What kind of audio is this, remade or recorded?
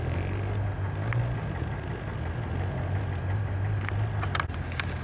recorded